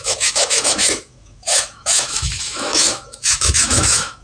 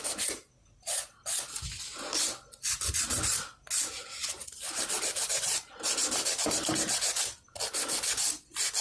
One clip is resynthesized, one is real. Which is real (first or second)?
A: second